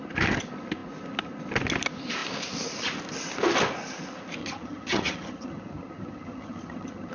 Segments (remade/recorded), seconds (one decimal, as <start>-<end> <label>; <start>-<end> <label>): 0.0-4.4 recorded; 4.4-7.1 remade